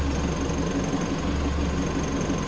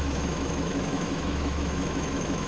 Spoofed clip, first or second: second